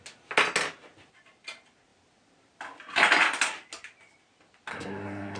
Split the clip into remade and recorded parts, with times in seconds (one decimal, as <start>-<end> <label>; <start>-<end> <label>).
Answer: 0.0-4.7 recorded; 4.7-5.4 remade